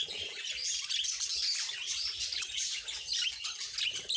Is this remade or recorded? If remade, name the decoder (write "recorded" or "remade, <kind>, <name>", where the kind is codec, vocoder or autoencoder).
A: recorded